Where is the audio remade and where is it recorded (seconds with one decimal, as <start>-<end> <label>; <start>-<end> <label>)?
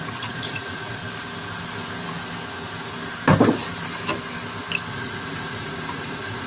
0.0-1.0 remade; 1.0-4.9 recorded; 4.9-6.5 remade